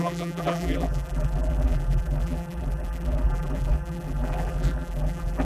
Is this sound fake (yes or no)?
yes